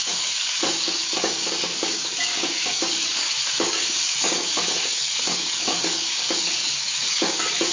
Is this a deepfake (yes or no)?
yes